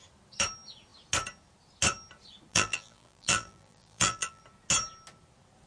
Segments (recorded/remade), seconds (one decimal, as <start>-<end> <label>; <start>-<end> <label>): 0.0-2.5 recorded; 2.5-4.4 remade; 4.4-5.7 recorded